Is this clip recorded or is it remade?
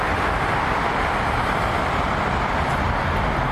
recorded